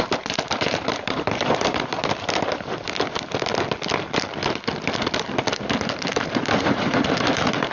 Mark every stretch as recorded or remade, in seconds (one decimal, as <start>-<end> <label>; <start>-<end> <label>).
0.0-2.0 remade; 2.0-6.6 recorded; 6.6-7.7 remade